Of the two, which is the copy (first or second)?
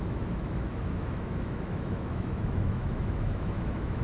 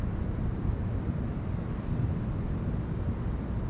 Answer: first